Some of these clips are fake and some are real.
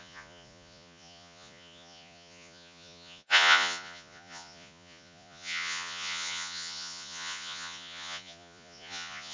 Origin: fake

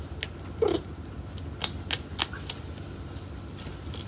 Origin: real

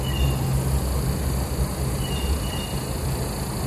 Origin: real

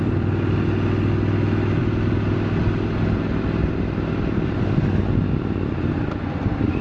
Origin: real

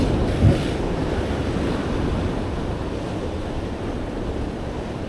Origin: real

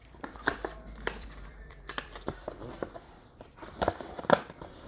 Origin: fake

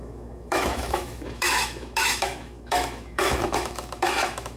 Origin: fake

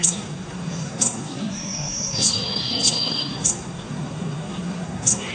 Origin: fake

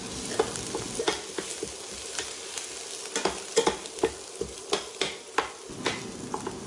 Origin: real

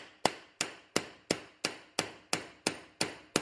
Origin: real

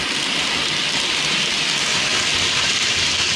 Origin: real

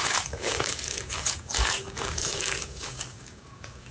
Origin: fake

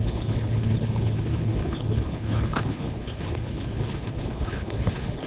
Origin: fake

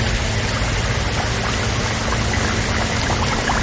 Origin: real